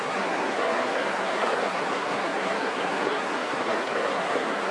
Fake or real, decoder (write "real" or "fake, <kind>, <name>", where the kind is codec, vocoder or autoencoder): fake, codec, SNAC